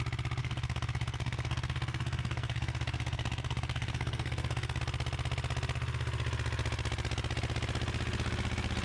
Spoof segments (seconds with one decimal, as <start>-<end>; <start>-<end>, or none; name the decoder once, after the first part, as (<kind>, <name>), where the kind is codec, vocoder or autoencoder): 0.4-4.8 (codec, SNAC)